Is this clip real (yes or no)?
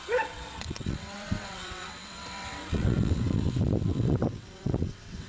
no